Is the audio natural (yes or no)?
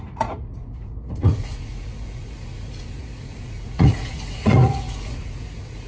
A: no